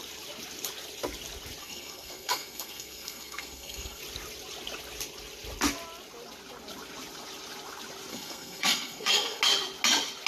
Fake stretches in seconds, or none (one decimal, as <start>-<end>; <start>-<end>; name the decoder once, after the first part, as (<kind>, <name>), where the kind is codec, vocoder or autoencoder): 1.6-4.0 (codec, SNAC); 8.1-9.4